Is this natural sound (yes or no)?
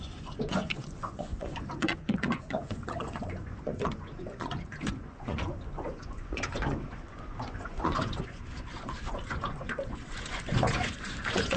no